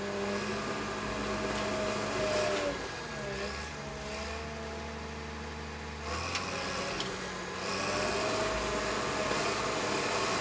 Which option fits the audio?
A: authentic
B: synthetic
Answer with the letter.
A